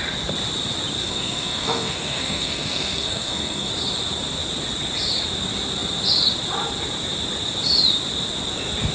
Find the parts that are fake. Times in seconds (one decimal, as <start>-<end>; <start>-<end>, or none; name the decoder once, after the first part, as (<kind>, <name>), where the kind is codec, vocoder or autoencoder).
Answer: 1.0-3.7 (codec, SNAC)